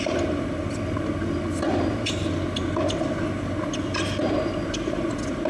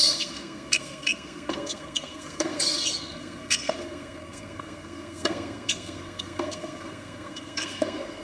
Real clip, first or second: first